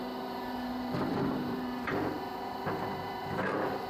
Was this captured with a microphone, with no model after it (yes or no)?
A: no